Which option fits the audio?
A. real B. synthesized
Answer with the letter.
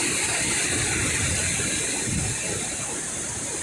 A